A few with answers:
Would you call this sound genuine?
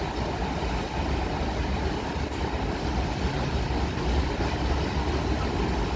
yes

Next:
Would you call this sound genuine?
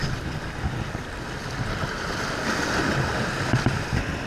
yes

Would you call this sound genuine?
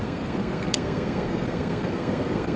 no